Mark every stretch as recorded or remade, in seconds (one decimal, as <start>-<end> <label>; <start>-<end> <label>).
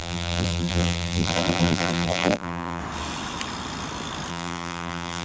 0.0-2.8 remade; 2.8-4.3 recorded; 4.3-5.2 remade